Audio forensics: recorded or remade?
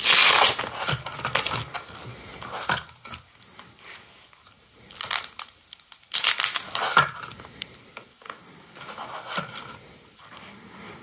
recorded